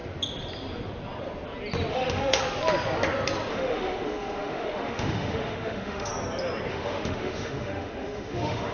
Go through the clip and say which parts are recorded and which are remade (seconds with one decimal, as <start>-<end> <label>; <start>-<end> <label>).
0.0-1.9 recorded; 1.9-2.4 remade; 2.4-3.5 recorded; 3.5-6.1 remade; 6.1-6.7 recorded; 6.7-8.7 remade